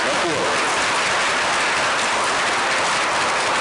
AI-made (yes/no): no